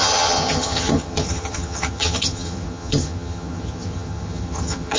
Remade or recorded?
remade